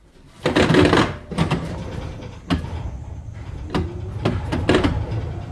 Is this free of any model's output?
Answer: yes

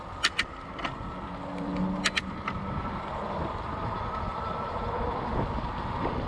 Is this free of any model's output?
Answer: yes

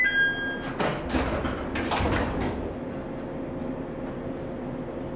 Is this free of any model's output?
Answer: yes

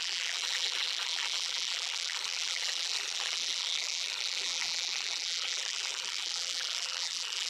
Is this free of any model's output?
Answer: no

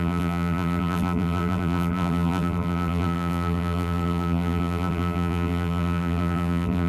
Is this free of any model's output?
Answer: no